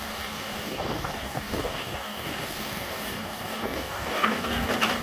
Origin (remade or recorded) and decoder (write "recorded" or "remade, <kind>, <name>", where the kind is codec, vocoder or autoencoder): remade, codec, DAC